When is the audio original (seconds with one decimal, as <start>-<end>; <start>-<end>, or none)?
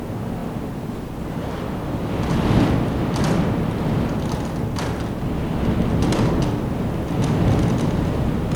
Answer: 0.0-8.6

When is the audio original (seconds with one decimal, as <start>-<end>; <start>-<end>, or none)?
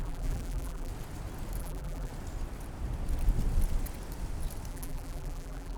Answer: 0.9-1.6; 2.1-4.7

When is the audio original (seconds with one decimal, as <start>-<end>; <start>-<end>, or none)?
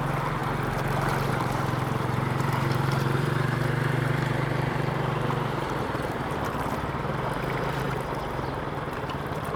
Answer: 0.4-1.3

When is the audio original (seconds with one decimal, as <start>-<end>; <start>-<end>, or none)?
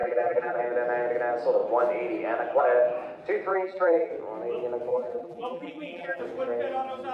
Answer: 0.6-3.5; 4.1-4.9; 6.2-7.1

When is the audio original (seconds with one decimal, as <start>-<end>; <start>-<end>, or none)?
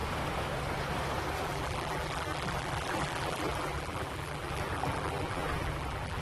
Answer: 0.0-1.4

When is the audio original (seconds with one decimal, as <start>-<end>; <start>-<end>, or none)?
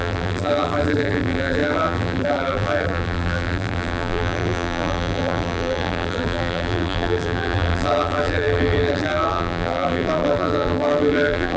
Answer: none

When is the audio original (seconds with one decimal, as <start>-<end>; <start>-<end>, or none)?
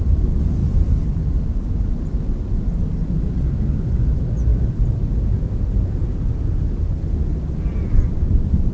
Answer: 0.0-8.7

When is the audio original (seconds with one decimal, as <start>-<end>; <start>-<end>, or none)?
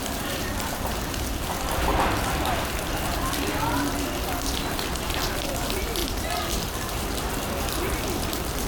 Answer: 1.9-5.3